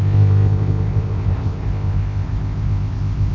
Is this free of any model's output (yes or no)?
no